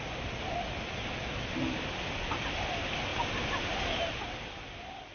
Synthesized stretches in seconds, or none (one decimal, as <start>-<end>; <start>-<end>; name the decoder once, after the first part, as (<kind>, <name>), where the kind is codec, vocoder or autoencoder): 3.1-4.5 (vocoder, BigVGAN v2)